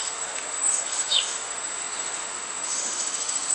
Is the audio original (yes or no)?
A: no